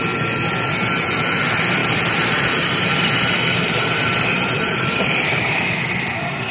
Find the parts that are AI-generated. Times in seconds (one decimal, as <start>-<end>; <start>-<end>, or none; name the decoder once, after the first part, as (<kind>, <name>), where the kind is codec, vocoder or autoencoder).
1.8-5.1 (vocoder, BigVGAN v2)